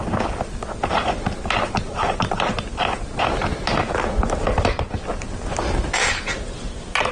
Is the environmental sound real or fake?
real